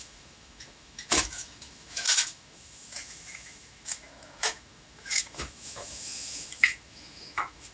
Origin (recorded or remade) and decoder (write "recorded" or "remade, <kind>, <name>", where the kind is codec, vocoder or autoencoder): remade, autoencoder, DAC-VAE